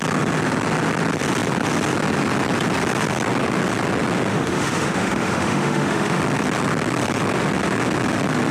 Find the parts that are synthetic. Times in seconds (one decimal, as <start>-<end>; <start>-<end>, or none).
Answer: 4.3-6.2